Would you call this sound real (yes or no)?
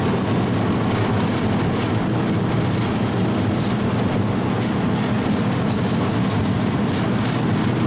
yes